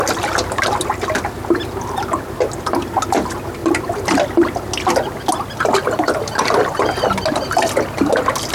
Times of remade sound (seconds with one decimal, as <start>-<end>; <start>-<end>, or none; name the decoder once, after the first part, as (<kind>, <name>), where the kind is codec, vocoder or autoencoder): none